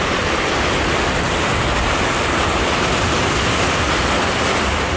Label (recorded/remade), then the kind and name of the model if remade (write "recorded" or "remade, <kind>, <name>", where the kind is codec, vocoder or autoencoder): recorded